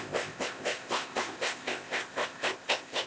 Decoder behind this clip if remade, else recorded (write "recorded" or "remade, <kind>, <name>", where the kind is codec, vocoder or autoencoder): remade, codec, ZipCodec